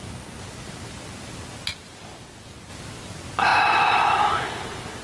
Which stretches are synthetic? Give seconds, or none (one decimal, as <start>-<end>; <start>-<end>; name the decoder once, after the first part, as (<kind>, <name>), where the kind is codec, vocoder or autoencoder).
none